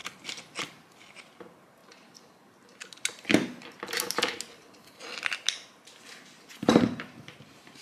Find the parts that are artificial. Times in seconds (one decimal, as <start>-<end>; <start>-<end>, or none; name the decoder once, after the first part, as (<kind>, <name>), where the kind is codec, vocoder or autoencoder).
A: 0.6-1.8 (vocoder, BigVGAN v2); 6.5-7.8